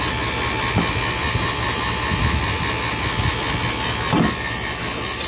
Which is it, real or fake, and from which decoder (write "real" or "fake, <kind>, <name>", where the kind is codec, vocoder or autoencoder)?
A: real